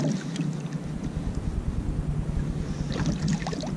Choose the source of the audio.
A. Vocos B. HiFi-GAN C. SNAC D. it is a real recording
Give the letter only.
D